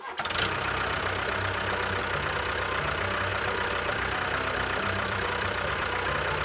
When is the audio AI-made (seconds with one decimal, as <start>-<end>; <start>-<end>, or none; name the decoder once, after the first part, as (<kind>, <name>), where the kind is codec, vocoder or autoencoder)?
3.3-5.7 (vocoder, BigVGAN v2)